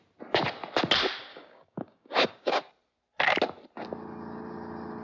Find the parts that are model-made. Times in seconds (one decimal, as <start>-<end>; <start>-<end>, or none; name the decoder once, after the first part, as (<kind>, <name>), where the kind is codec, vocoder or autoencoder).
1.3-2.6 (codec, DAC)